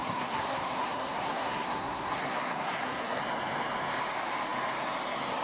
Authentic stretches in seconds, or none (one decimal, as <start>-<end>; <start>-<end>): 3.2-5.4